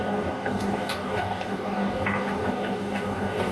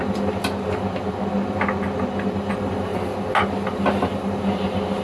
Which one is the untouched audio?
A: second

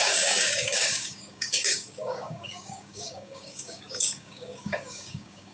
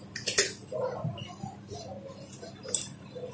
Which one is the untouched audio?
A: second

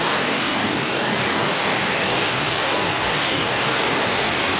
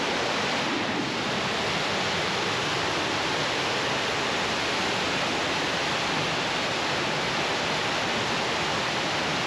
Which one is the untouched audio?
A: second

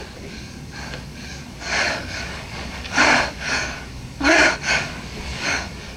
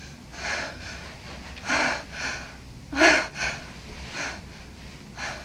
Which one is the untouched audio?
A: second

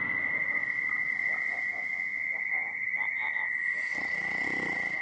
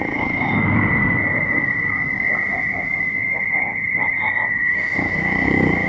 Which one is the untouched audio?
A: first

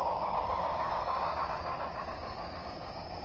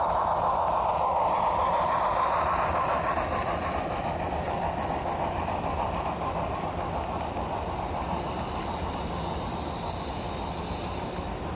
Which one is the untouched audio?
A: second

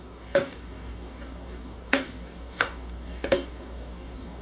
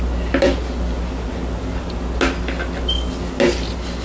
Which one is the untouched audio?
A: second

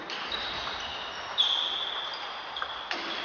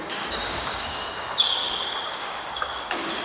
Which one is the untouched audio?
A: first